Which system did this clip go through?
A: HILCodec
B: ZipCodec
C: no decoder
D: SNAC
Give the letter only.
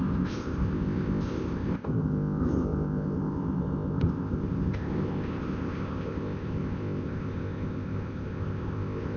B